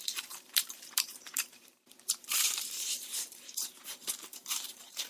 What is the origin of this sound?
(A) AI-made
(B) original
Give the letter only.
A